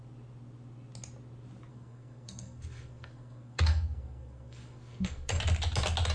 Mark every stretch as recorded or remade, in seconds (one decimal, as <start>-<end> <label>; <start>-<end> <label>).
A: 0.0-1.7 recorded; 1.7-5.4 remade; 5.4-6.1 recorded